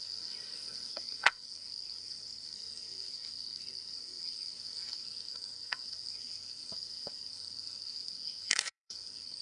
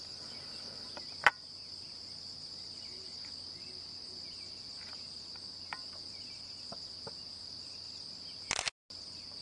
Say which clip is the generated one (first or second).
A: first